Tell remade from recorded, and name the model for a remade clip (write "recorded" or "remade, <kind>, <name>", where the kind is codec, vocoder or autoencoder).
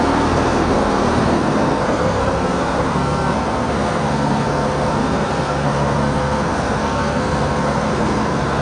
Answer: remade, codec, SNAC